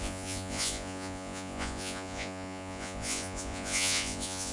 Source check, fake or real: fake